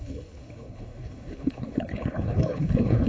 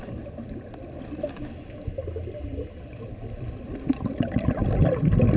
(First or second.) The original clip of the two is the second